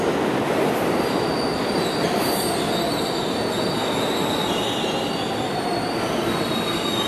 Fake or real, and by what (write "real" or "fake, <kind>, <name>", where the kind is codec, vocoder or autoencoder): real